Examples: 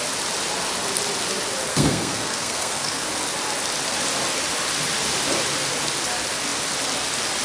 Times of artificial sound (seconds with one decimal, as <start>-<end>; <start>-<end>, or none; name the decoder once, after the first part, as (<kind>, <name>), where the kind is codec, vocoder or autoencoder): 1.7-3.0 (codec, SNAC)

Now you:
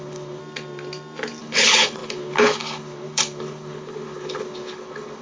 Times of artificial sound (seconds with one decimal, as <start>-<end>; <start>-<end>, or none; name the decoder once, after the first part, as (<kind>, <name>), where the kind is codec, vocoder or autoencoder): 0.0-0.4 (codec, HILCodec); 1.4-5.2

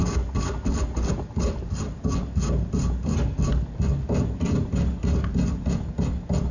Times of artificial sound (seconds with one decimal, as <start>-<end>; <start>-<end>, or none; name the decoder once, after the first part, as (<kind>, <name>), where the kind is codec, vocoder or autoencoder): none

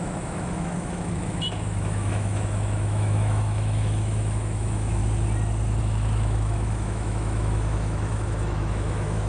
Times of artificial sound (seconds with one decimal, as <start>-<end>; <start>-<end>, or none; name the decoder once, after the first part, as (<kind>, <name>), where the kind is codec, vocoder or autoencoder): 0.0-5.0 (autoencoder, DAC-VAE); 5.8-9.3

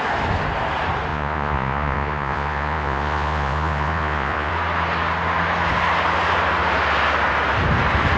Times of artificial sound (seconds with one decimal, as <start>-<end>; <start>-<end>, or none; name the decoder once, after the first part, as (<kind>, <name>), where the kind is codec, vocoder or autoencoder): 1.1-4.5 (vocoder, Vocos)

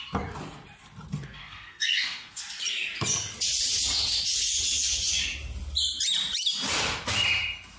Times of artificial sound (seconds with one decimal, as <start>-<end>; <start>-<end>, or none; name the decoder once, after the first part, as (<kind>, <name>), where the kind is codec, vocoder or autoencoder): 1.4-2.4 (codec, SNAC)

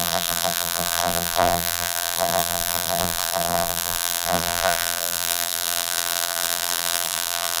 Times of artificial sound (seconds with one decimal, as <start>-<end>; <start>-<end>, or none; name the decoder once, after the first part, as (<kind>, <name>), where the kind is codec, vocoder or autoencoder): 0.0-7.6 (vocoder, BigVGAN v2)

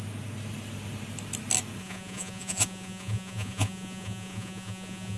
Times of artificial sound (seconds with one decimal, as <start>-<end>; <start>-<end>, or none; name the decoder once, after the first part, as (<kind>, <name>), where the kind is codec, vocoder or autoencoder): 1.8-5.2 (vocoder, Vocos)